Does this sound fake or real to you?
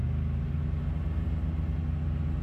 real